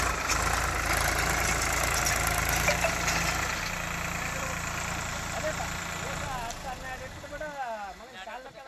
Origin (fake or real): real